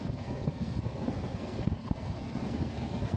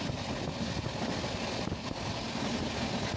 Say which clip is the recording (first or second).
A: second